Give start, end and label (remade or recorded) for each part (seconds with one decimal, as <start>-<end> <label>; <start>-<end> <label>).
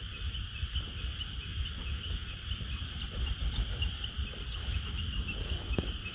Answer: 0.0-6.1 recorded